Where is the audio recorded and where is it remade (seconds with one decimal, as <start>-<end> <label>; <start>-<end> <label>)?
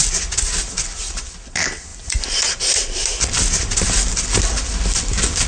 0.0-5.5 recorded